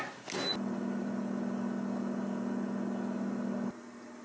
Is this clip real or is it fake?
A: real